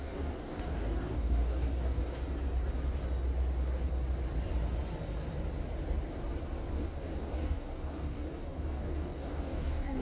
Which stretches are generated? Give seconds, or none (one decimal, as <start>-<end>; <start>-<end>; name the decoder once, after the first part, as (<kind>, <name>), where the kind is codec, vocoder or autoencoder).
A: 0.0-2.0 (codec, DAC); 6.7-10.0